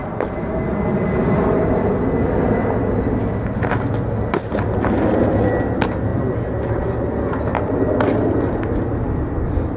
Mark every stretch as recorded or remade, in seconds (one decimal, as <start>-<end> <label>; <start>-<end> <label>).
0.0-9.8 recorded